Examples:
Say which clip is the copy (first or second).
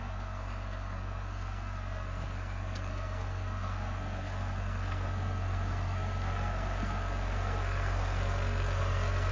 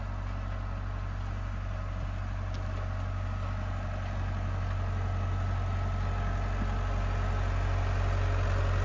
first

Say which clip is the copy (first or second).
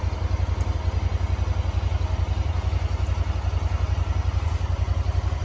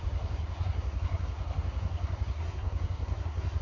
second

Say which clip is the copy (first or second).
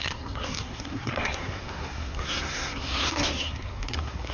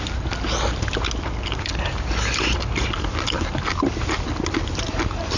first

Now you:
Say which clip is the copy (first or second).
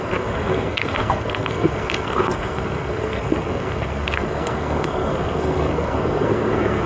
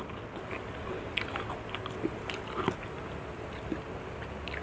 first